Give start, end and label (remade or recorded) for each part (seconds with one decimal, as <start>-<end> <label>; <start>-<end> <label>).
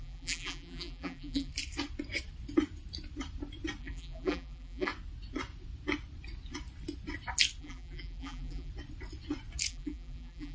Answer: 0.0-1.5 remade; 1.5-3.8 recorded; 3.8-4.9 remade; 4.9-7.6 recorded; 7.6-8.7 remade; 8.7-9.7 recorded; 9.7-10.5 remade